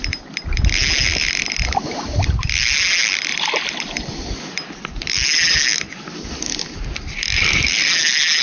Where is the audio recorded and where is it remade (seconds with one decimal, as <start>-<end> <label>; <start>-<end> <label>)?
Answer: 0.0-8.4 recorded